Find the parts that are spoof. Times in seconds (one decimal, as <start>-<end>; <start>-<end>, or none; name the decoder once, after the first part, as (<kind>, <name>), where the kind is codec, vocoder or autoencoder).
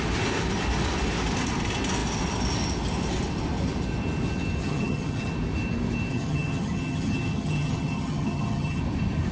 4.6-5.3 (vocoder, HiFi-GAN); 6.1-8.8